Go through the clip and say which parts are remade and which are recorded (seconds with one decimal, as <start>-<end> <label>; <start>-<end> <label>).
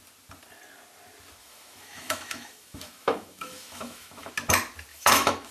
0.0-1.4 recorded; 1.4-4.3 remade; 4.3-4.9 recorded; 4.9-5.5 remade